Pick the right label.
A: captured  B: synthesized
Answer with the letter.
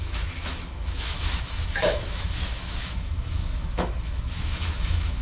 B